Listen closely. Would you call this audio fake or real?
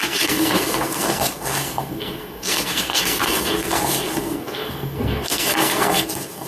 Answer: fake